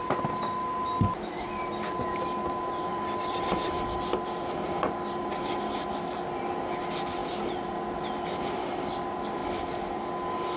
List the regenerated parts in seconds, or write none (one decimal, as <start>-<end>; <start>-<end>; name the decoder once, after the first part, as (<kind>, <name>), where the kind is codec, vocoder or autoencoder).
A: 2.9-5.4 (vocoder, BigVGAN v2)